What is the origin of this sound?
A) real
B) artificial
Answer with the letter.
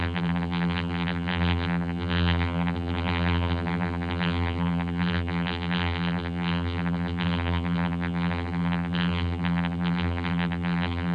B